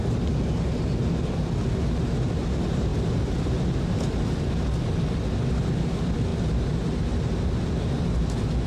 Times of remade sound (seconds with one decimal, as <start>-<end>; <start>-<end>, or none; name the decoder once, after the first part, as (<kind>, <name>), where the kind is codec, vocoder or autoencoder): none